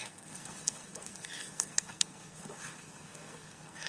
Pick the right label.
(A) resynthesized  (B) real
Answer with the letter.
A